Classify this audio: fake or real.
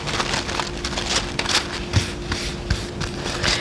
real